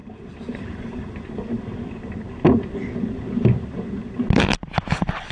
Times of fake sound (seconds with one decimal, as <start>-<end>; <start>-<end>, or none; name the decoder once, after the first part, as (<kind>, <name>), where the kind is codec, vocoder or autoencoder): 0.0-1.3 (vocoder, BigVGAN v2)